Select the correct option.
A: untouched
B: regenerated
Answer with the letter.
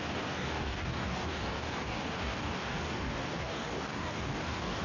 B